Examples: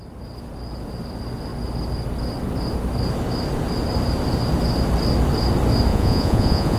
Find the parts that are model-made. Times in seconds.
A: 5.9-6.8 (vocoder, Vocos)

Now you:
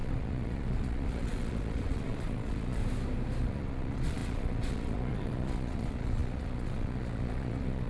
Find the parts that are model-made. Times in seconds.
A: 0.0-2.8 (vocoder, Vocos); 3.4-7.9

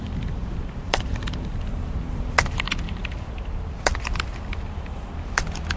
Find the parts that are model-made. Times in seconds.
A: none

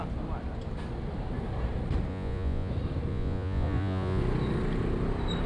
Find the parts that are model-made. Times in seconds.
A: 2.1-2.7 (vocoder, Vocos); 3.1-4.2

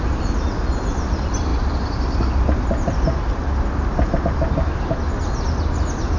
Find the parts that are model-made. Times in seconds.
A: none

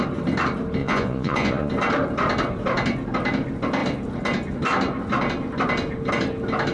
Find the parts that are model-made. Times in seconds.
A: 0.8-1.7 (vocoder, Vocos)